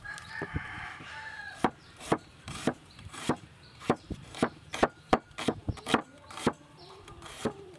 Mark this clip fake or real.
fake